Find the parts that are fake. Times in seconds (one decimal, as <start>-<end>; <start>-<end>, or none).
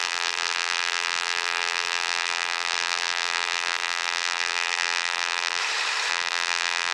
0.0-5.6; 6.1-6.9